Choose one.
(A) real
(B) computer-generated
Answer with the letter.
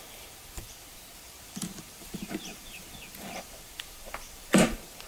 B